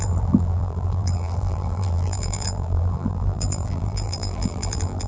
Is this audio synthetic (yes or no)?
yes